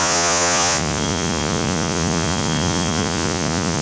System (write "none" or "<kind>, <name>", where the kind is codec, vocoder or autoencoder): vocoder, Vocos